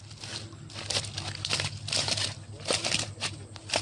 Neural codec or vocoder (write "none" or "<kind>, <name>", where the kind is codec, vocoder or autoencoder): none